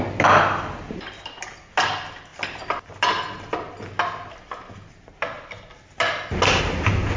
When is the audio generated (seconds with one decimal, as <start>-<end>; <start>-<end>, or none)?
none